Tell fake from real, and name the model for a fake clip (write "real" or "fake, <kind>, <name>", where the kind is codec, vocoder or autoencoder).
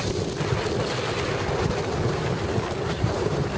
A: real